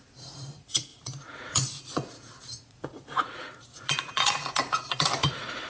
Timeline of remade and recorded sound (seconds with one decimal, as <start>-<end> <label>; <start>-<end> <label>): 0.0-5.7 remade